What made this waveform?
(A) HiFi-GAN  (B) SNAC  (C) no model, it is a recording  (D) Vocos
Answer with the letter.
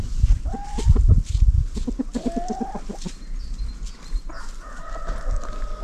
C